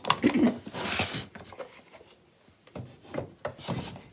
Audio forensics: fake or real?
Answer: real